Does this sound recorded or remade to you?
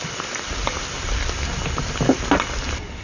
recorded